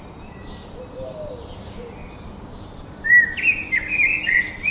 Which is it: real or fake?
real